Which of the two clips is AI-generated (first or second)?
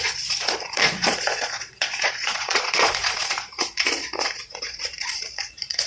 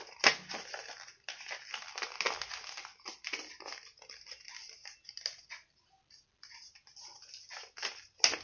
first